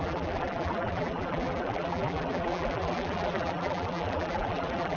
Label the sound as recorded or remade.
remade